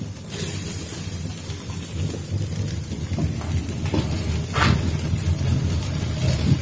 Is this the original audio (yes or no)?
yes